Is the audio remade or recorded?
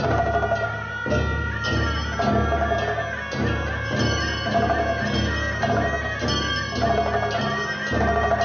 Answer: recorded